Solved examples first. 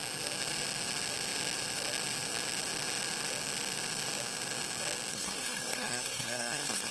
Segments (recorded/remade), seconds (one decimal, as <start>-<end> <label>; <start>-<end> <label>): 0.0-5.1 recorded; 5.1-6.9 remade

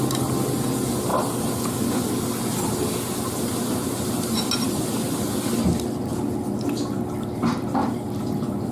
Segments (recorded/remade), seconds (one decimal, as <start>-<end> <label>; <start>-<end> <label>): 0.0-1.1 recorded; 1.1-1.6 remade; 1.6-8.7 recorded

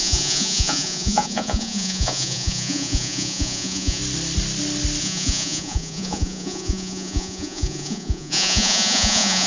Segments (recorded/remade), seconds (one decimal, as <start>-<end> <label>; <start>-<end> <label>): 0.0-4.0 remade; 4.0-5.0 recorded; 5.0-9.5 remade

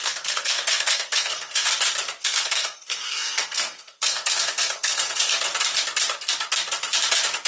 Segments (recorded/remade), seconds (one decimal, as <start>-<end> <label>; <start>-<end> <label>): 0.0-1.7 remade; 1.7-2.2 recorded; 2.2-5.3 remade; 5.3-7.5 recorded